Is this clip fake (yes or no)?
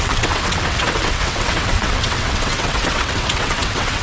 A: yes